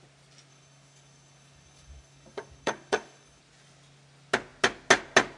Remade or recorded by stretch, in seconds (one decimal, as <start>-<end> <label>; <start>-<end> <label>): 0.0-0.5 recorded; 0.5-3.4 remade; 3.4-5.4 recorded

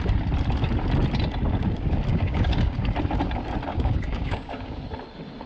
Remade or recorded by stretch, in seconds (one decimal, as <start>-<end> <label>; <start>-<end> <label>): 0.0-2.1 recorded; 2.1-2.8 remade; 2.8-3.7 recorded; 3.7-4.8 remade; 4.8-5.5 recorded